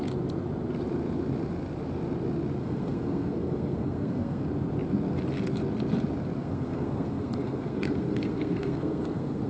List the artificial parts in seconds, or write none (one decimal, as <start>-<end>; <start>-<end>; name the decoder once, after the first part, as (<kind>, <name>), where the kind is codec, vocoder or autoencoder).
2.6-4.4 (codec, SNAC); 6.4-9.5